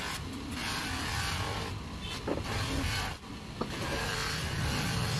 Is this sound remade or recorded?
recorded